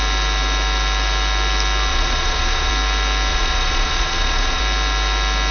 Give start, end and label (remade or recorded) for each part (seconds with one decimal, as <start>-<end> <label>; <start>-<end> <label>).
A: 0.0-1.9 recorded; 1.9-2.7 remade; 2.7-3.3 recorded; 3.3-4.6 remade; 4.6-5.5 recorded